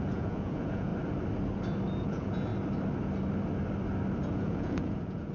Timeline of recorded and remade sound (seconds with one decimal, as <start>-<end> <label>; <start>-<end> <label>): 0.0-0.9 remade; 0.9-2.0 recorded; 2.0-2.5 remade; 2.5-4.3 recorded; 4.3-5.3 remade